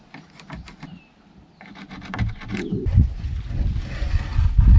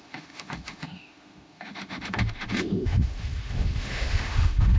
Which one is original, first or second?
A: first